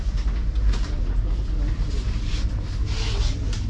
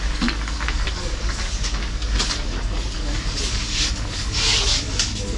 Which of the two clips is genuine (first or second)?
first